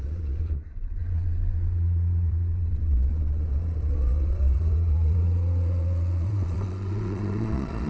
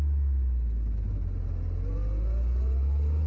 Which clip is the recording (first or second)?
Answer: second